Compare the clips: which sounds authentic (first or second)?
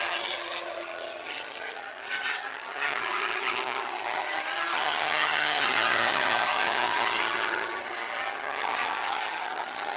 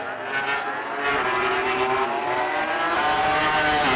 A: second